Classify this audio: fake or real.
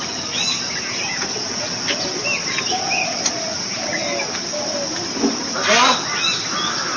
real